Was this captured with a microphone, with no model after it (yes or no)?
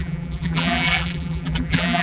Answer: no